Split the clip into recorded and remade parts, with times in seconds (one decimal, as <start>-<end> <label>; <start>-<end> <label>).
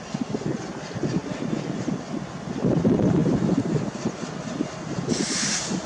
0.0-5.9 recorded